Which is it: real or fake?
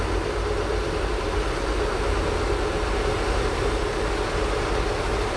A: real